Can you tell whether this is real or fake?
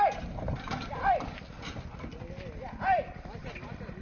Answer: real